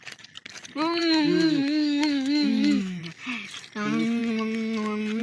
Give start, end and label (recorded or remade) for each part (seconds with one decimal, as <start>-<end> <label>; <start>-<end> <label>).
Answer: 0.0-1.0 recorded; 1.0-3.0 remade; 3.0-5.2 recorded